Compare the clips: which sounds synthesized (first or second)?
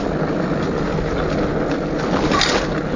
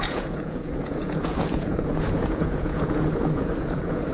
second